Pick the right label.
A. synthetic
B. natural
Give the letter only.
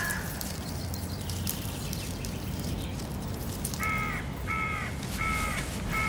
A